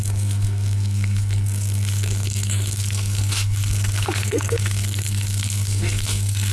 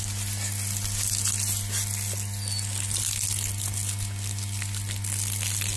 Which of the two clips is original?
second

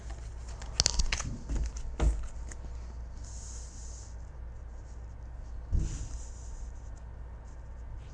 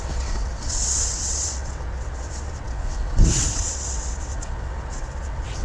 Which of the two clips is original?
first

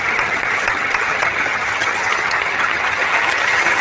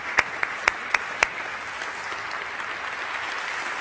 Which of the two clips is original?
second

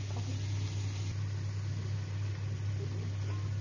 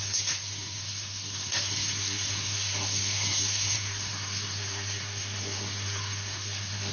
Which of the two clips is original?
first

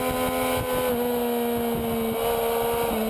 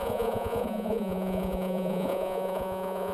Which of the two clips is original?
first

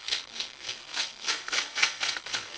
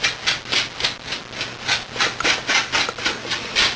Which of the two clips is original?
second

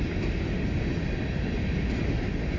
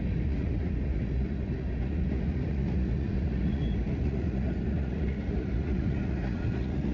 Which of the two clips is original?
first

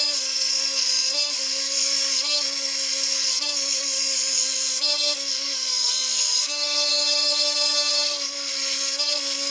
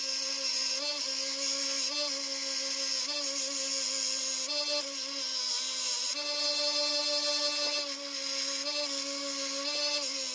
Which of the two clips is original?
second